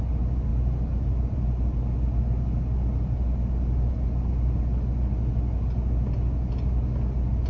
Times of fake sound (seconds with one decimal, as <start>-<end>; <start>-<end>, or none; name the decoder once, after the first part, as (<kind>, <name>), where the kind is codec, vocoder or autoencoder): none